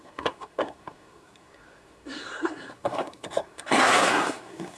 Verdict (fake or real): fake